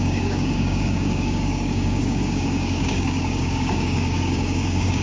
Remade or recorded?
remade